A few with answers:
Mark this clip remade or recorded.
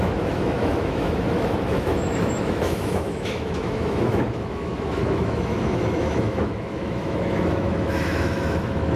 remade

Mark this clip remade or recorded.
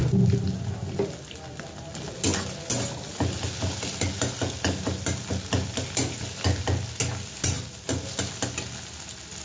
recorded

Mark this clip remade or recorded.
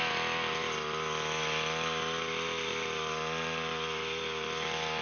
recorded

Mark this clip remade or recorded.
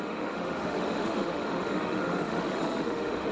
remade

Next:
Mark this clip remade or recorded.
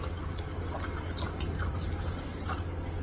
recorded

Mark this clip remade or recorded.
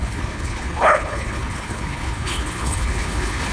remade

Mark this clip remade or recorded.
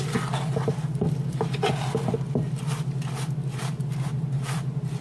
recorded